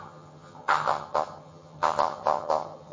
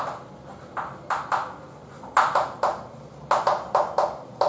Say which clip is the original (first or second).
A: second